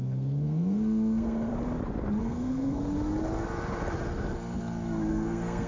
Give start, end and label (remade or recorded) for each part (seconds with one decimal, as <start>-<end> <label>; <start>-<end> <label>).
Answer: 0.0-1.5 remade; 1.5-2.2 recorded; 2.2-2.8 remade; 2.8-5.1 recorded; 5.1-5.7 remade